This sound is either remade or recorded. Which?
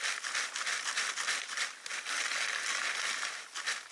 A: recorded